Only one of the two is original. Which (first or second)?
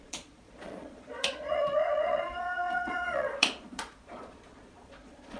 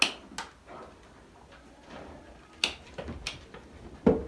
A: second